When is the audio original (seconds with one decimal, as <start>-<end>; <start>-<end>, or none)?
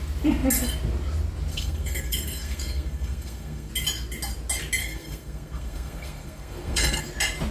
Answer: 0.0-1.5; 3.7-4.8; 7.0-7.5